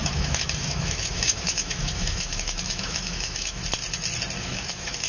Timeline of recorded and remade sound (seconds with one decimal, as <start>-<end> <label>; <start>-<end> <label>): 0.0-3.6 remade; 3.6-4.4 recorded; 4.4-5.1 remade